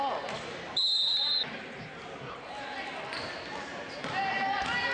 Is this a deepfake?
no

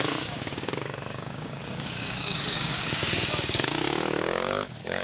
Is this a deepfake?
yes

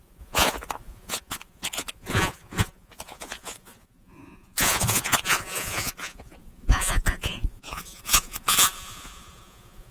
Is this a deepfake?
yes